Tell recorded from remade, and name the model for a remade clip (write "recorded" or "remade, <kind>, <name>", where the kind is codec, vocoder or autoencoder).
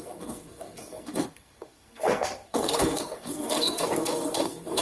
remade, codec, SNAC